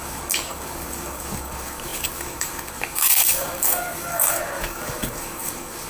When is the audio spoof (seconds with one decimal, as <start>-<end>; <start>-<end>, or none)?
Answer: 0.0-5.9